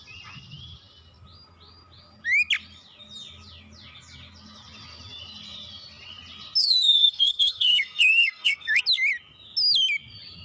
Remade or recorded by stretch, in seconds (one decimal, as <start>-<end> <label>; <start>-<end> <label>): 0.0-6.6 recorded; 6.6-8.8 remade; 8.8-10.4 recorded